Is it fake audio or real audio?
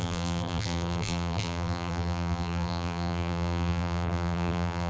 fake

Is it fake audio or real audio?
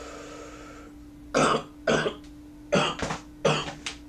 real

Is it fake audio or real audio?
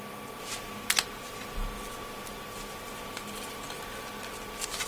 real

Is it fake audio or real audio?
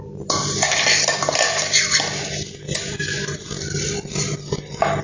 real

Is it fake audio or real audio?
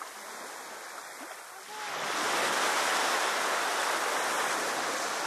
real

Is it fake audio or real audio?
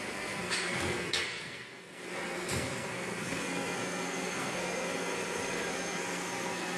fake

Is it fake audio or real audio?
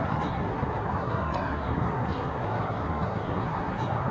fake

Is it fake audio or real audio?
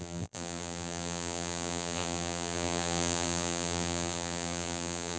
fake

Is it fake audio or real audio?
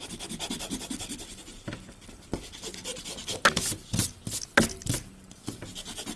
real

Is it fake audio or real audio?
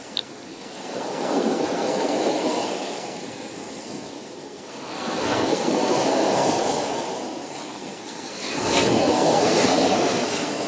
fake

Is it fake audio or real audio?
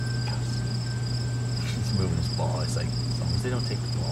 real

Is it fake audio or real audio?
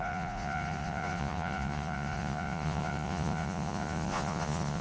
fake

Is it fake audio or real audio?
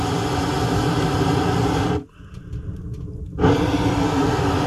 real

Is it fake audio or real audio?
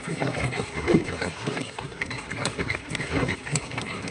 fake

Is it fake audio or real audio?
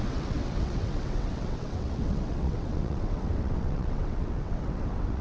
fake